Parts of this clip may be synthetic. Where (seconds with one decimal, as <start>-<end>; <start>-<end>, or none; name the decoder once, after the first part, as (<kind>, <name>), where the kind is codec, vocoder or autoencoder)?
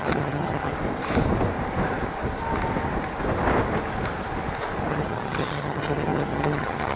0.0-0.7 (vocoder, HiFi-GAN); 4.9-7.0